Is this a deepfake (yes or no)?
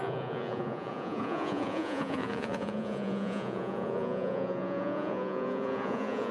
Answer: yes